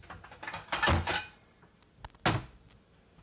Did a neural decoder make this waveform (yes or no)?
no